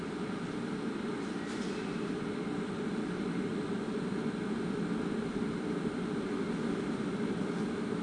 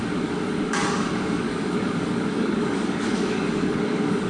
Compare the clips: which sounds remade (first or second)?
second